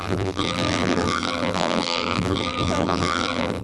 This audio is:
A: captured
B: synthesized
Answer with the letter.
B